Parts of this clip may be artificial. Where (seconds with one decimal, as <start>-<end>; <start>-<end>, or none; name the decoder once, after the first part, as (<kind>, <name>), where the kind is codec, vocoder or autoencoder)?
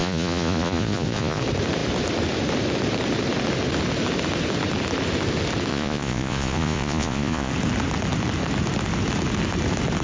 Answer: 0.0-1.4 (vocoder, Vocos); 5.7-7.5